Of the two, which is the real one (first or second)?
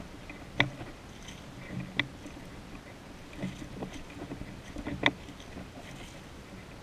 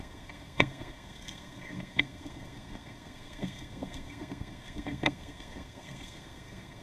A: first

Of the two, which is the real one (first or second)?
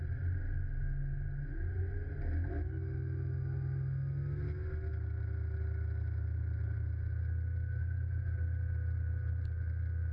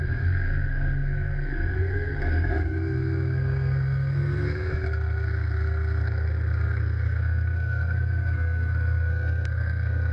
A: first